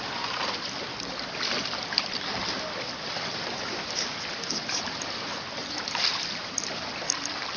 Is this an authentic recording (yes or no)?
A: no